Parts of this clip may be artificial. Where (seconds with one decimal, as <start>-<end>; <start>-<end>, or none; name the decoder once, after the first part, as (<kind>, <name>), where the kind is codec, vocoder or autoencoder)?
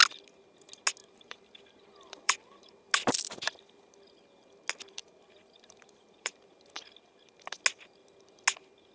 1.0-2.9 (vocoder, BigVGAN v2); 5.0-6.3